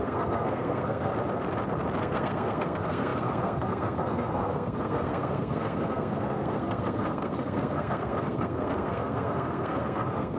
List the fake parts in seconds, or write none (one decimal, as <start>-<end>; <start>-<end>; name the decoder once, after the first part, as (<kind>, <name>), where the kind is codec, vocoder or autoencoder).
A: 0.0-1.1 (codec, SNAC); 2.0-10.4